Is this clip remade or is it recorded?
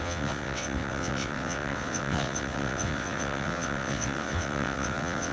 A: remade